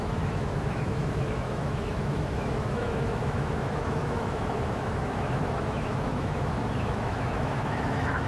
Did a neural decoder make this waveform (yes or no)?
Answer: yes